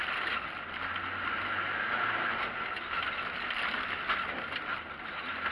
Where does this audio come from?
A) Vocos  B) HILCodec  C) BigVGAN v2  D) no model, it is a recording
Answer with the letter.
D